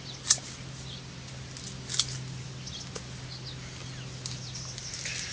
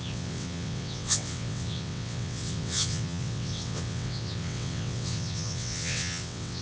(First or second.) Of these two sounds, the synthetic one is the second